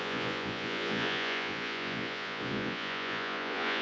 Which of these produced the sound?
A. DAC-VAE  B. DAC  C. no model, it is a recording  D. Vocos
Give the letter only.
D